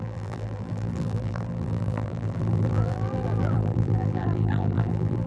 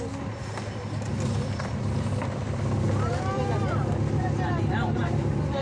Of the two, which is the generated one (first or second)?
first